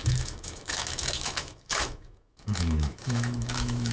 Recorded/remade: remade